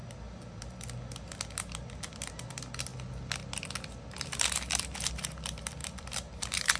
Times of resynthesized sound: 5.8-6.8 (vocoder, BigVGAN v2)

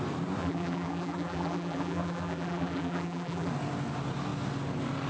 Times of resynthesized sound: 0.4-3.5 (vocoder, BigVGAN v2)

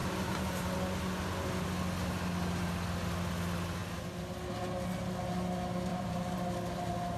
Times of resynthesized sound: 0.0-0.7 (vocoder, BigVGAN v2); 5.9-6.5

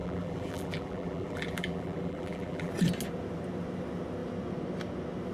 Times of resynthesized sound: 0.0-2.7 (vocoder, BigVGAN v2)

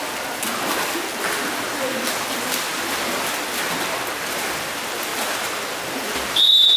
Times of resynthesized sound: 2.7-4.5 (vocoder, BigVGAN v2); 5.1-5.8

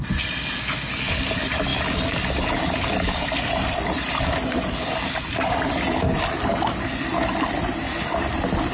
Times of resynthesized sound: 1.7-5.1 (vocoder, BigVGAN v2)

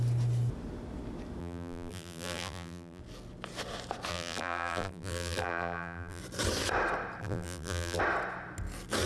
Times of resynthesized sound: 1.4-3.0 (vocoder, BigVGAN v2); 4.1-6.2; 7.2-8.0

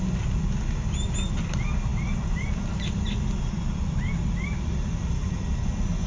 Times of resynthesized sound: none